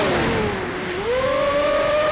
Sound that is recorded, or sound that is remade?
recorded